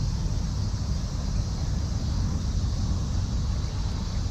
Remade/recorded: recorded